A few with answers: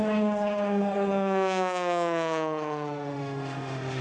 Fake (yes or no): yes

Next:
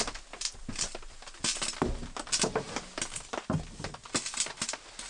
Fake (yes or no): no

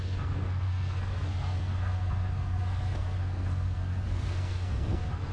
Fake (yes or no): yes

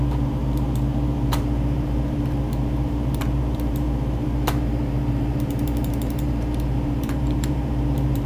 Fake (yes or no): yes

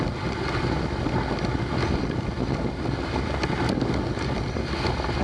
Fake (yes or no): no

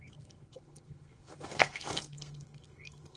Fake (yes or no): yes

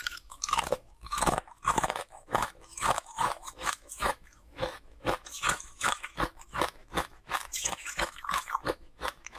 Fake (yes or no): yes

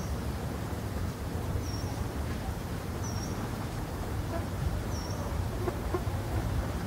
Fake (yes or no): yes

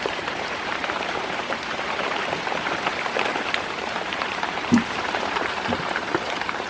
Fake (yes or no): yes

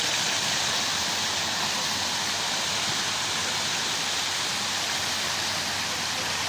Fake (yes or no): no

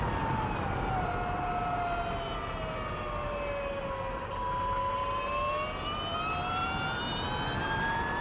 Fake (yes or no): no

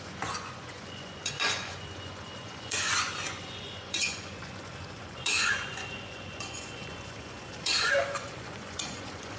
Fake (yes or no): yes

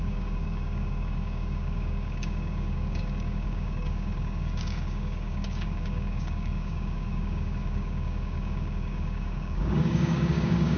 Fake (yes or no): yes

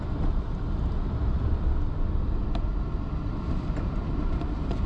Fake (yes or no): no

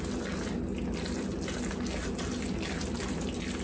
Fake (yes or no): no